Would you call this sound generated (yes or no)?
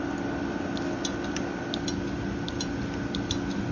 no